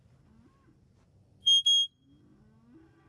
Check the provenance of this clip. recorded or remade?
recorded